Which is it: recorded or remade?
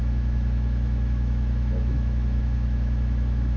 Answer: remade